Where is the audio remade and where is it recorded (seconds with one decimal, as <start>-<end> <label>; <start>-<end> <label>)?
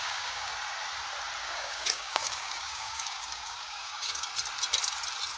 0.0-0.5 remade; 0.5-1.4 recorded; 1.4-4.3 remade; 4.3-5.4 recorded